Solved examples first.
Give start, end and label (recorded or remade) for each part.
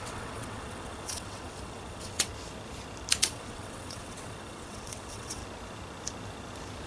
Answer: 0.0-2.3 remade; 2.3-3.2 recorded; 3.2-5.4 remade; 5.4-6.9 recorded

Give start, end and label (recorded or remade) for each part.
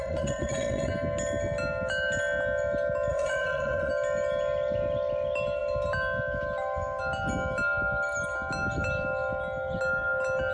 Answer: 0.0-0.9 remade; 0.9-3.1 recorded; 3.1-3.9 remade; 3.9-10.5 recorded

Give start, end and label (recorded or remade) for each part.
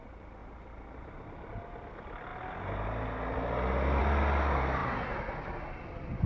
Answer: 0.0-6.3 recorded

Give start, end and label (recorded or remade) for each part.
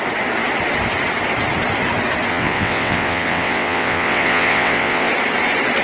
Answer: 0.0-2.3 recorded; 2.3-5.1 remade; 5.1-5.8 recorded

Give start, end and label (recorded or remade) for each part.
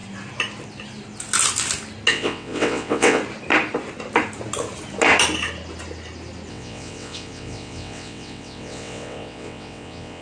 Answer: 0.0-2.1 recorded; 2.1-3.2 remade; 3.2-6.5 recorded; 6.5-10.2 remade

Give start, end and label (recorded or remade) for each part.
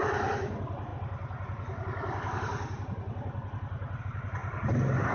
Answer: 0.0-5.1 recorded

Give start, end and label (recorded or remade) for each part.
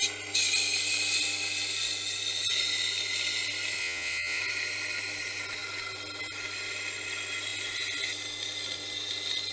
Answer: 0.0-3.8 recorded; 3.8-4.4 remade; 4.4-9.5 recorded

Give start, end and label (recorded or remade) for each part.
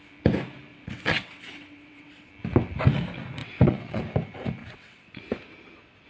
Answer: 0.0-0.7 recorded; 0.7-2.3 remade; 2.3-3.4 recorded; 3.4-4.0 remade; 4.0-4.6 recorded; 4.6-5.2 remade; 5.2-6.1 recorded